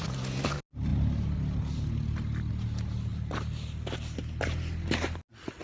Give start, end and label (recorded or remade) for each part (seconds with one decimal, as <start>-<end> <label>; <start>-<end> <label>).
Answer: 0.0-5.6 recorded